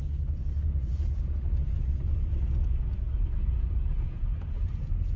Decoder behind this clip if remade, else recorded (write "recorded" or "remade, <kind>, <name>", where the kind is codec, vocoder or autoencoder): remade, vocoder, Vocos